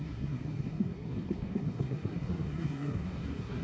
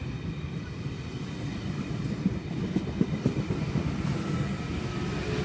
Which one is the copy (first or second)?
first